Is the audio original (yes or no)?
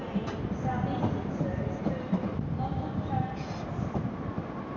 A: yes